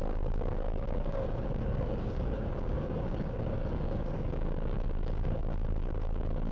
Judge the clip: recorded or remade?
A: remade